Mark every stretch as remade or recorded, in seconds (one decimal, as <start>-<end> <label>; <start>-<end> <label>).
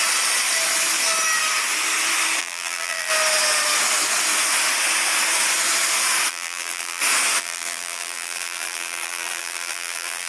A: 0.0-2.4 recorded; 2.4-3.1 remade; 3.1-6.3 recorded; 6.3-7.0 remade; 7.0-7.4 recorded; 7.4-10.3 remade